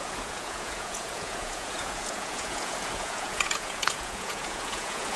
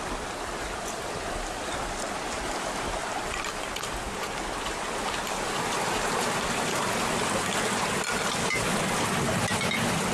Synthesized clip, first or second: first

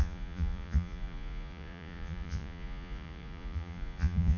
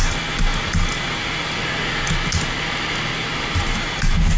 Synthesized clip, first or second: first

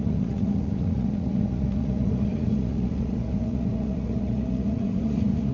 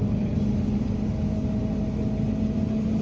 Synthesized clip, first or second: first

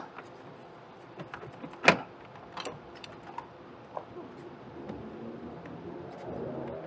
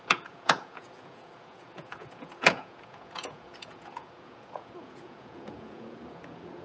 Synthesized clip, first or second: second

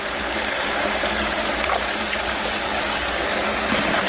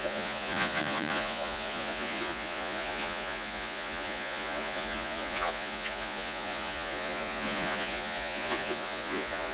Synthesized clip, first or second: second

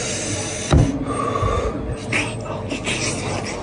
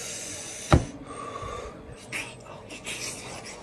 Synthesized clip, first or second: second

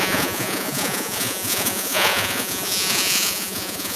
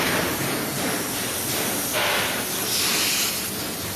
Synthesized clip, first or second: first